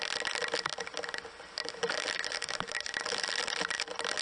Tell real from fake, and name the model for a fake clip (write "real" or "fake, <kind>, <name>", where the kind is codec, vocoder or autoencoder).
real